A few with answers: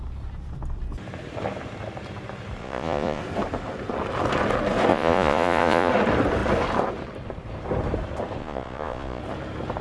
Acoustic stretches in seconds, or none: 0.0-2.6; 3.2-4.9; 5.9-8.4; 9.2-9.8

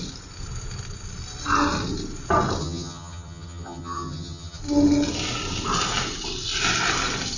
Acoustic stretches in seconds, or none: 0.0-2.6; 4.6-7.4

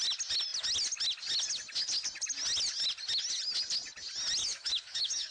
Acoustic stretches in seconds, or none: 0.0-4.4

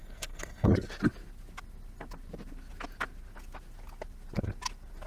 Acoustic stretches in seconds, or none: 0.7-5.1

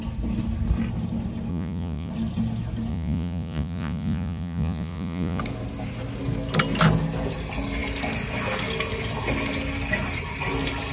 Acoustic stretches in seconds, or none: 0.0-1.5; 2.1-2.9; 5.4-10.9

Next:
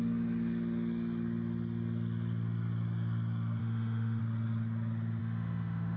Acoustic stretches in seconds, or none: 0.0-3.6; 4.2-5.2